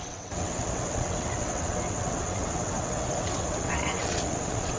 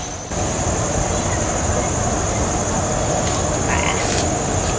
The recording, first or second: second